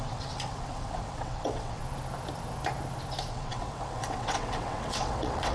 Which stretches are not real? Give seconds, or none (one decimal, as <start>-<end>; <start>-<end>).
0.0-1.8; 3.3-5.5